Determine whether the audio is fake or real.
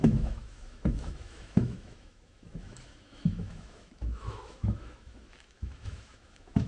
fake